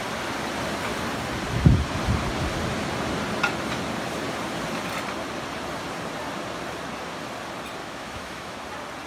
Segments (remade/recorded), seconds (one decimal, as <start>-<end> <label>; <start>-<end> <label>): 0.0-7.8 recorded; 7.8-8.6 remade; 8.6-9.1 recorded